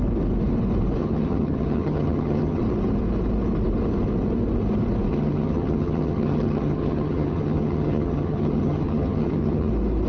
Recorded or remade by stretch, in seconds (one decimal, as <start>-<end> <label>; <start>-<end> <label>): 0.0-1.0 recorded; 1.0-2.6 remade; 2.6-5.1 recorded; 5.1-9.7 remade; 9.7-10.1 recorded